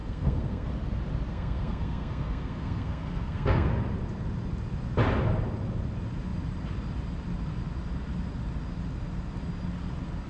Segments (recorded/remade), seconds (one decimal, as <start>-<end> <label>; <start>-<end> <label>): 0.0-0.7 remade; 0.7-1.3 recorded; 1.3-3.7 remade; 3.7-10.3 recorded